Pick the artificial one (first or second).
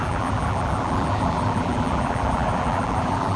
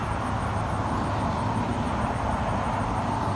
first